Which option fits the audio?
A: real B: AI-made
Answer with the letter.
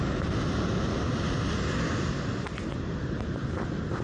A